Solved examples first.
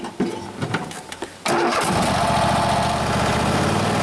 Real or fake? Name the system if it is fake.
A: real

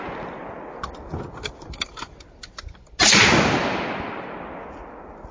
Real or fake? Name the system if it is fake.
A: real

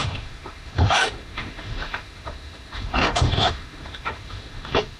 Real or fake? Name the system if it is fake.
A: fake, autoencoder, DAC-VAE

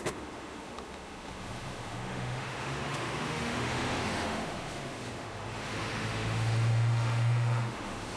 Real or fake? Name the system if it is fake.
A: fake, autoencoder, DAC-VAE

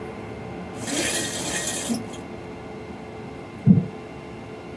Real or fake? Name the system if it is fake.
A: real